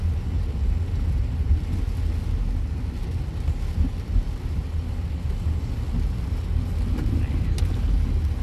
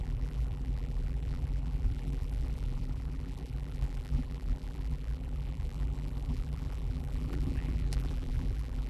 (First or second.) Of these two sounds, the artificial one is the second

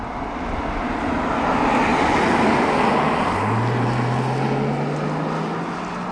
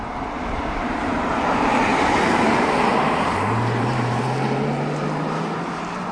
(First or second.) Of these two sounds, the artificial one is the second